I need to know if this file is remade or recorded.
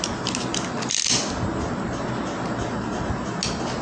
recorded